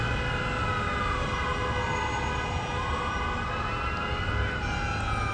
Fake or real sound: real